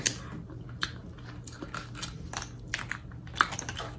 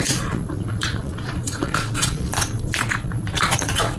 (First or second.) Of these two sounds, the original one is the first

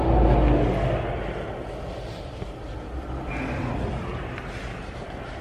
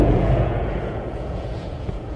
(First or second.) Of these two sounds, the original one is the first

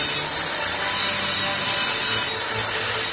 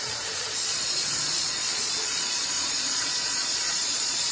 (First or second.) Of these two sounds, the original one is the first